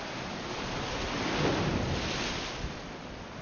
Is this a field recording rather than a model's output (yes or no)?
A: yes